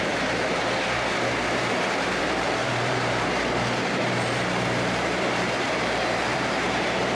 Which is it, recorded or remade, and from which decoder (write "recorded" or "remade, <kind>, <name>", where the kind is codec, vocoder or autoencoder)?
remade, vocoder, BigVGAN v2